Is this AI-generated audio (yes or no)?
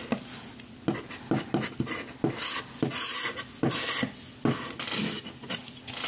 no